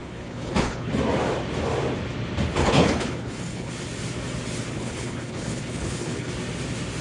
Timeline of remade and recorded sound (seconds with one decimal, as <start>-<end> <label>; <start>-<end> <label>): 0.0-0.9 remade; 0.9-2.6 recorded; 2.6-3.7 remade; 3.7-4.7 recorded; 4.7-6.3 remade; 6.3-7.0 recorded